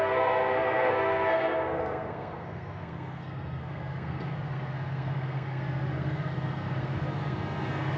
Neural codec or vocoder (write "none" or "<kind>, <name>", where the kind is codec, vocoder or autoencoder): codec, SNAC